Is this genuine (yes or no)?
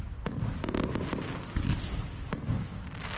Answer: yes